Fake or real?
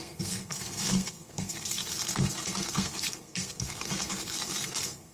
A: fake